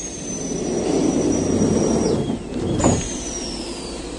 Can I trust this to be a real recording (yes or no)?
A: no